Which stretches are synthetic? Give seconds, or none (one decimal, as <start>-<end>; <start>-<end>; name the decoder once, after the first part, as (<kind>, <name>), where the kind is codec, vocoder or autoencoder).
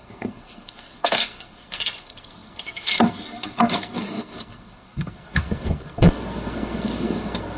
0.0-7.6 (codec, SNAC)